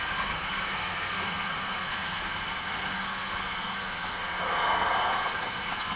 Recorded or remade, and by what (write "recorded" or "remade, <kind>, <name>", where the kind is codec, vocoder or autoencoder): remade, codec, SNAC